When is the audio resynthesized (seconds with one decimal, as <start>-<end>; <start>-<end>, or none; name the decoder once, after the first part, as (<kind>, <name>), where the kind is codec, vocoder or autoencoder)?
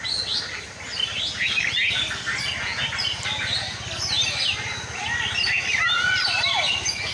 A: none